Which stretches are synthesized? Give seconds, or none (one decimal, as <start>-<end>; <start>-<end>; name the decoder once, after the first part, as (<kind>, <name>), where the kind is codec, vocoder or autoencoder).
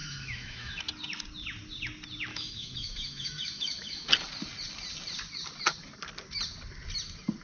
0.0-0.8 (autoencoder, DAC-VAE); 2.3-4.1